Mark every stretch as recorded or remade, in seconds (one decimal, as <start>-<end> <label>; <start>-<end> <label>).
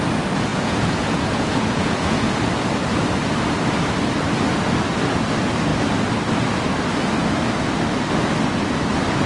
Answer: 0.0-0.5 recorded; 0.5-2.4 remade; 2.4-9.3 recorded